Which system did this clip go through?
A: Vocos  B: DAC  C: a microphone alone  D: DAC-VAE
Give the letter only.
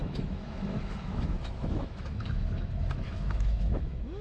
D